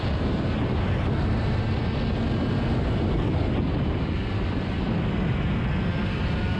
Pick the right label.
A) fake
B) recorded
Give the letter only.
B